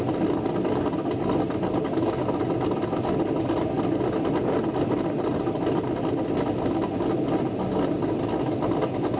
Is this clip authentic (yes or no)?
yes